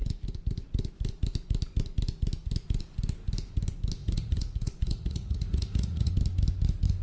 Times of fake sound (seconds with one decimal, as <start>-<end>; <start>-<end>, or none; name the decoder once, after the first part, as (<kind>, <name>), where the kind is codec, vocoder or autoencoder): 4.0-6.1 (vocoder, Vocos)